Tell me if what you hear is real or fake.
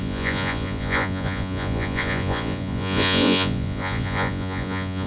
fake